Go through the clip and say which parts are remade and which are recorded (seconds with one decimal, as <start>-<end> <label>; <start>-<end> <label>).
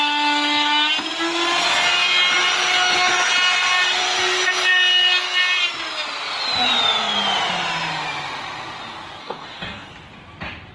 0.0-9.2 recorded; 9.2-9.9 remade; 9.9-10.7 recorded